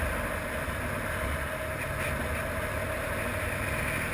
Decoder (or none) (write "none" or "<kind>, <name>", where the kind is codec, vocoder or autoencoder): none